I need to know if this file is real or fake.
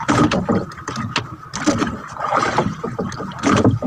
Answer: real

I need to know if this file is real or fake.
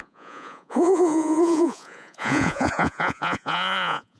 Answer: fake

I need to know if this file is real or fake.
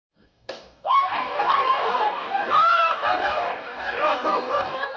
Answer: fake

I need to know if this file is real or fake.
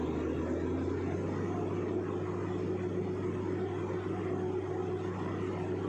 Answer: real